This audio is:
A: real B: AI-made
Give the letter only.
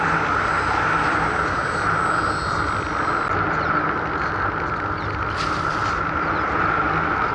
A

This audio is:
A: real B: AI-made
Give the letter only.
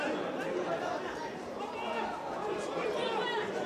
A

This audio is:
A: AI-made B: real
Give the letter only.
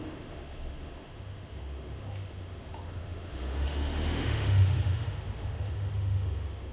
A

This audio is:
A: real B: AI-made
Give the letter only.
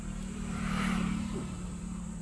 B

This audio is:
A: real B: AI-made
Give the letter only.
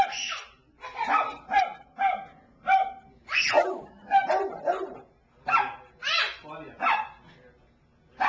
A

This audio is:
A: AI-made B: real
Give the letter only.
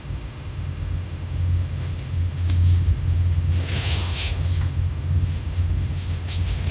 A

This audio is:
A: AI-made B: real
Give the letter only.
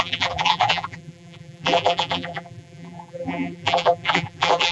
A